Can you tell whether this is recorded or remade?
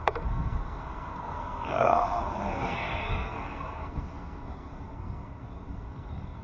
remade